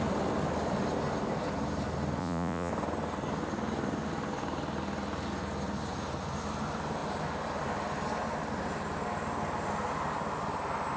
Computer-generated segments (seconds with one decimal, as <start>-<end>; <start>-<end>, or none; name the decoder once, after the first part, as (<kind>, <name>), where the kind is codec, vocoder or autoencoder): 2.2-2.7 (vocoder, Vocos)